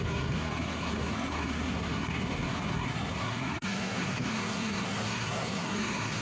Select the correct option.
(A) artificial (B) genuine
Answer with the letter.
A